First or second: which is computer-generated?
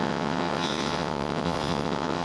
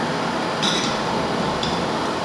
first